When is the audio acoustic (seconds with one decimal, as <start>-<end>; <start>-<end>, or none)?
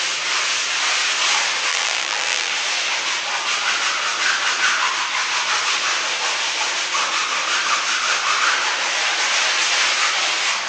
0.0-1.7; 2.5-10.7